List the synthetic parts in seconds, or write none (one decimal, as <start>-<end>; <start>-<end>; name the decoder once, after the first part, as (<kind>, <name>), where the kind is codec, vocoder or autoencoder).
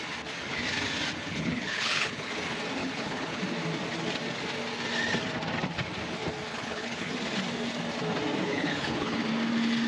1.2-2.3 (codec, HILCodec); 2.8-3.4; 6.5-7.1; 8.4-9.2